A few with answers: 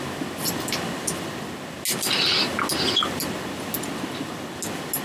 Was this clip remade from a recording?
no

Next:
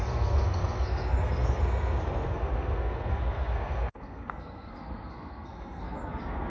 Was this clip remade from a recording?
yes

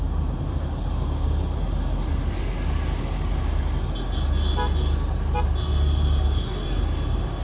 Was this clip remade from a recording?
no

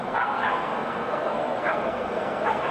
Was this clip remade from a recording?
yes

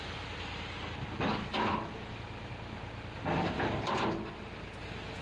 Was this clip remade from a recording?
no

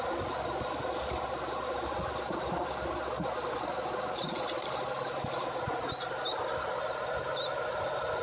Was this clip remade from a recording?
no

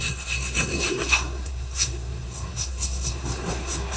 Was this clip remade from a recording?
yes